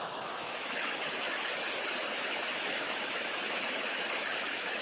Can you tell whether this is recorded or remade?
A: remade